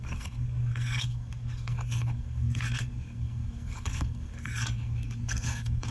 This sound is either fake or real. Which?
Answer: fake